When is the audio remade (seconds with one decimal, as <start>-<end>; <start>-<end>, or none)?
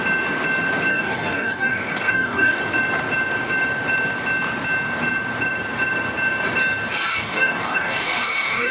0.9-2.6; 7.1-8.7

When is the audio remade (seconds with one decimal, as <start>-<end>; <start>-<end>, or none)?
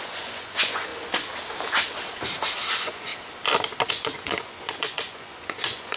0.0-0.9; 2.7-3.1; 3.9-6.0